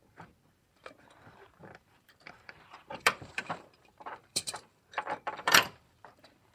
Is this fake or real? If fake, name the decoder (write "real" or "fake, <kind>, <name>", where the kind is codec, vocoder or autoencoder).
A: fake, vocoder, BigVGAN v2